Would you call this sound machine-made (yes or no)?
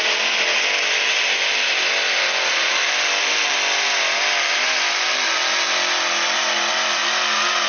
no